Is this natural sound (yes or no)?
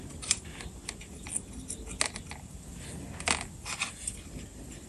yes